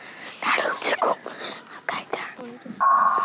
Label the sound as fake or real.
real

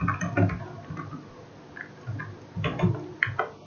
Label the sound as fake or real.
real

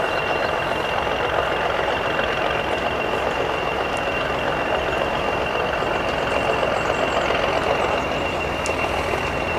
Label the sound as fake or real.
real